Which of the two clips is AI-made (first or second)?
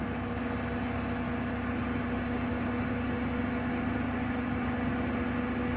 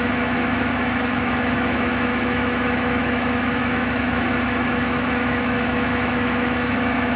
second